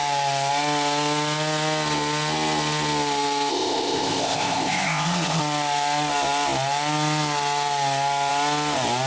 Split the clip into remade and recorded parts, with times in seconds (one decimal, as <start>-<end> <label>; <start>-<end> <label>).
0.0-3.5 recorded; 3.5-5.4 remade; 5.4-9.1 recorded